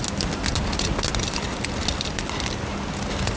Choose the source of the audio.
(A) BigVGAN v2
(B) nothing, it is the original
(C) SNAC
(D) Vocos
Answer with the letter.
B